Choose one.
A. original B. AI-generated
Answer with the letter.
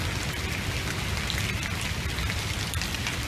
A